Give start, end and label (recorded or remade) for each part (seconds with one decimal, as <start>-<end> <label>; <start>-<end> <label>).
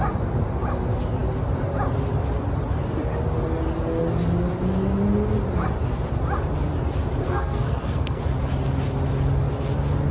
0.0-7.2 recorded; 7.2-8.2 remade; 8.2-10.1 recorded